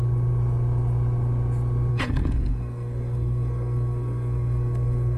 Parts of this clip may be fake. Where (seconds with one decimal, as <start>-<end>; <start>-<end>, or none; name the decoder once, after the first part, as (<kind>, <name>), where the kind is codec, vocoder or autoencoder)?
1.9-5.2 (codec, SNAC)